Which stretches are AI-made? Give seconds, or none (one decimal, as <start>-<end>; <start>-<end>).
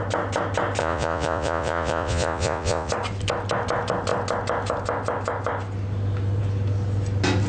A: 0.8-2.9